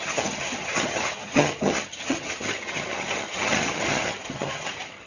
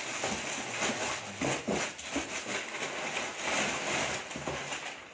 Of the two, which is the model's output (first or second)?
first